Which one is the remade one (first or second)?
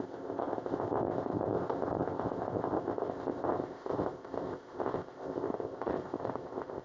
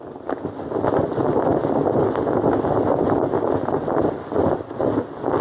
first